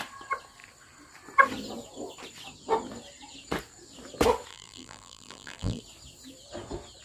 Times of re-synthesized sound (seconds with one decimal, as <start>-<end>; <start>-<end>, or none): 4.5-5.8